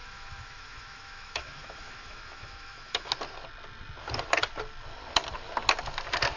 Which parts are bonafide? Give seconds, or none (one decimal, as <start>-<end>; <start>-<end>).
3.1-6.4